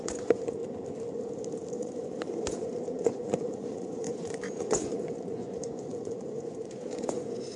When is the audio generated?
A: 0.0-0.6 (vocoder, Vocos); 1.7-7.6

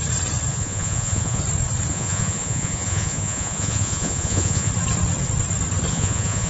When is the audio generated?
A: 0.5-1.4 (vocoder, Vocos); 1.9-4.7; 5.9-6.5

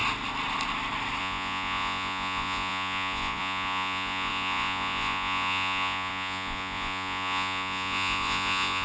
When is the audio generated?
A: 1.2-8.8 (vocoder, Vocos)

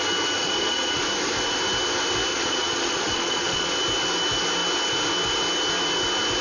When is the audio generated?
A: 0.4-1.0 (vocoder, Vocos); 2.3-3.7

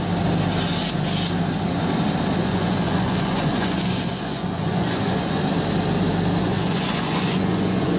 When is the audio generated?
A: 2.4-5.4 (vocoder, Vocos); 6.4-8.0

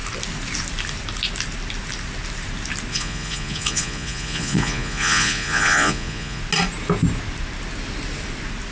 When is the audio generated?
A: 2.9-6.4 (vocoder, Vocos)

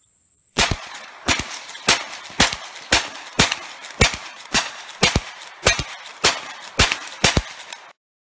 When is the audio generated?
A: 0.4-1.3 (vocoder, Vocos); 4.3-4.8

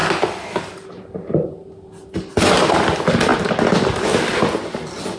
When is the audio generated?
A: none